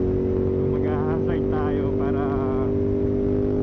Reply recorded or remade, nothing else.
recorded